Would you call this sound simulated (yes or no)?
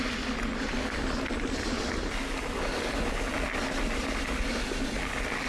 no